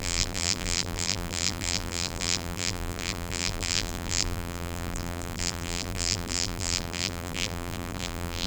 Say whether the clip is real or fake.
fake